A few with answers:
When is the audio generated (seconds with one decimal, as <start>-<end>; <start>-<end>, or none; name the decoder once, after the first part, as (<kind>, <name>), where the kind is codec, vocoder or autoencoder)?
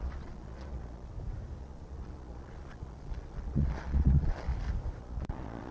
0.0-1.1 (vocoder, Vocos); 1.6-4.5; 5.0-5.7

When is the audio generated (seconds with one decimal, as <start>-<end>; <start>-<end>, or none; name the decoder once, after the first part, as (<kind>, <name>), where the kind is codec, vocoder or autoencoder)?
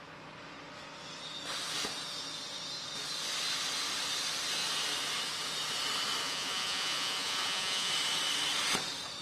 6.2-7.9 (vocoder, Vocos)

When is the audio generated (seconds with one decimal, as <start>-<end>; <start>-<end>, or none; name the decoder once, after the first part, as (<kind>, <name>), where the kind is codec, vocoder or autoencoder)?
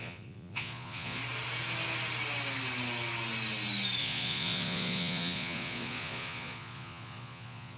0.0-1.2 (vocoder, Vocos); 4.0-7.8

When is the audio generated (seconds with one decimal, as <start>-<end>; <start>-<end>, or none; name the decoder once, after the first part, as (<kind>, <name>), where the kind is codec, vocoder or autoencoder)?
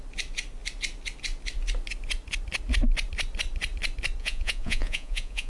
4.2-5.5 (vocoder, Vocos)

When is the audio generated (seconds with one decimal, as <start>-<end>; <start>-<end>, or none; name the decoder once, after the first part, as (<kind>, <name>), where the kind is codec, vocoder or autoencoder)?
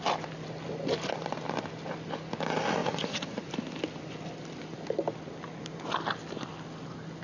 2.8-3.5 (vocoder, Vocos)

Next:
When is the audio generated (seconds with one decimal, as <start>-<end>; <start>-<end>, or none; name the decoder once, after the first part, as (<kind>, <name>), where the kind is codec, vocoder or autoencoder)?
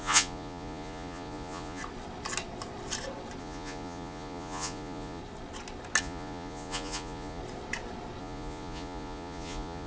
0.0-1.8 (vocoder, Vocos); 3.4-5.2; 6.0-7.4; 8.2-9.9